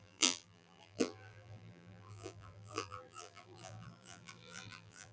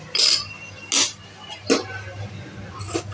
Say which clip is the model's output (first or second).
first